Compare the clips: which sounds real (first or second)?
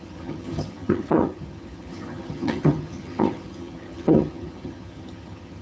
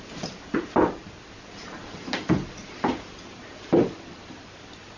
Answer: second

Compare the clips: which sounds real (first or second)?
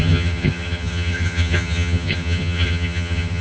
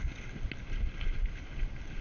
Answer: second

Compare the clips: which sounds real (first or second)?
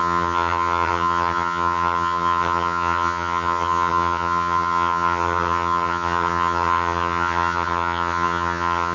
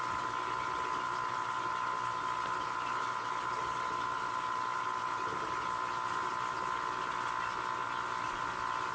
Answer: second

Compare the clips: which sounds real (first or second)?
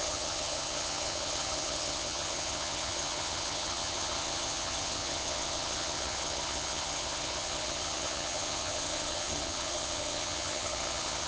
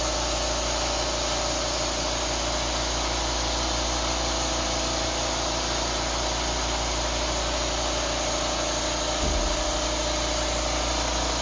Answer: second